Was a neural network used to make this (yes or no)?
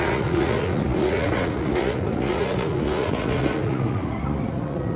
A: yes